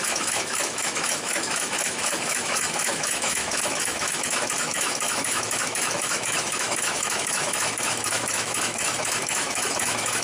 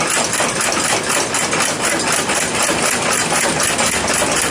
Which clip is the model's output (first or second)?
first